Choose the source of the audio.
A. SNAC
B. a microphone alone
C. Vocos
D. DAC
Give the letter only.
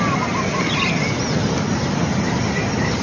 B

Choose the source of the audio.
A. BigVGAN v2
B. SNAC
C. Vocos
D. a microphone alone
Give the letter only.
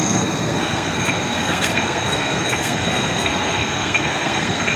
B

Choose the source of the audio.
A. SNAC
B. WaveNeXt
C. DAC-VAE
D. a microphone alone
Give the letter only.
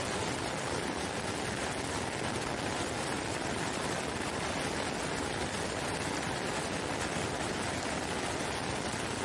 D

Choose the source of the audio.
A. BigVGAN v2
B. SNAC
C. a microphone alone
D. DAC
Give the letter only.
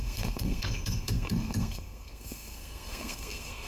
B